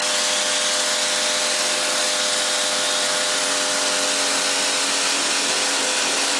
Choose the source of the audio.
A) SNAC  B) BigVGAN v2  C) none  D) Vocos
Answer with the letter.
C